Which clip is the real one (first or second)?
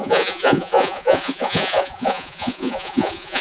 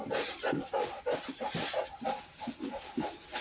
second